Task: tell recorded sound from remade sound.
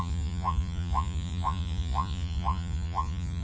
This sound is remade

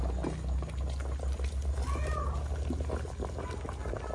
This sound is recorded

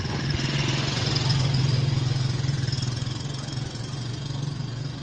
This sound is remade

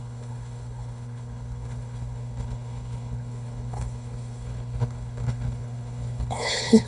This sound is remade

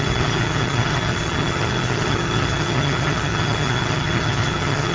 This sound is remade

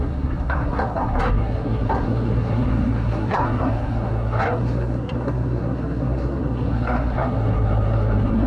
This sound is remade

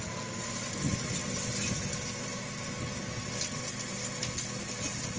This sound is recorded